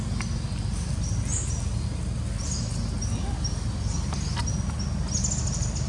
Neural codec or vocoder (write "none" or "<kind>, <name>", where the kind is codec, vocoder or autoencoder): none